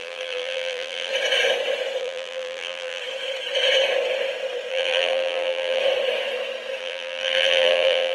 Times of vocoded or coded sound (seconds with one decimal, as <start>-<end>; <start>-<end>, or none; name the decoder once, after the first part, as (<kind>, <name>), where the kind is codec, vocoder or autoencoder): 0.0-1.1 (vocoder, BigVGAN v2); 2.0-3.0; 4.7-5.8; 6.8-8.1